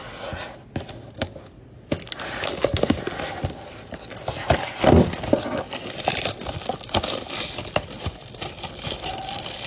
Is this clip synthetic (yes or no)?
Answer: no